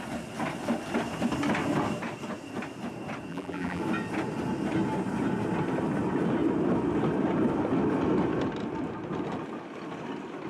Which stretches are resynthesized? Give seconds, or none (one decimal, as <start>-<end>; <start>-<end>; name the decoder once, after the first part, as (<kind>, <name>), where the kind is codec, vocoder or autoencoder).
3.3-3.8 (vocoder, BigVGAN v2)